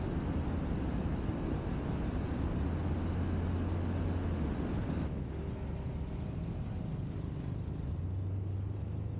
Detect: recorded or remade recorded